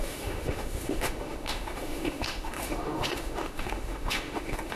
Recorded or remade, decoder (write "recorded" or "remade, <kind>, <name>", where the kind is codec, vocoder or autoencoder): remade, autoencoder, DAC-VAE